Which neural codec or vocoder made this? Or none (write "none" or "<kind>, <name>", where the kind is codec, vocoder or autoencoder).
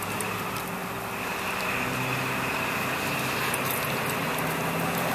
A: none